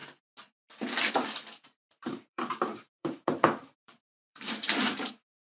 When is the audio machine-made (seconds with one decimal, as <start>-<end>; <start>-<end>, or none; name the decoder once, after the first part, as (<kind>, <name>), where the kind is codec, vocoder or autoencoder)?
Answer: 1.8-5.1 (vocoder, BigVGAN v2)